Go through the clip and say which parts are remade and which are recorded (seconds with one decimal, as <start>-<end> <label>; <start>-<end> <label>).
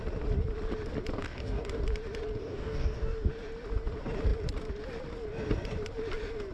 0.0-1.2 recorded; 1.2-1.8 remade; 1.8-2.4 recorded; 2.4-3.3 remade; 3.3-6.5 recorded